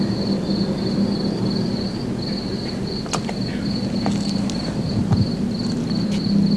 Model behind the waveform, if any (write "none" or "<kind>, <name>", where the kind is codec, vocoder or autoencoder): none